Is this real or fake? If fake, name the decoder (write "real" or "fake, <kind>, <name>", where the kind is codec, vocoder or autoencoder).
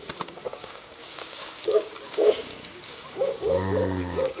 fake, codec, DAC